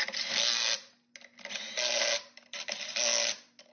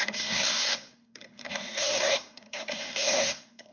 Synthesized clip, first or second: second